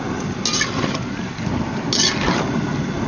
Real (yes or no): yes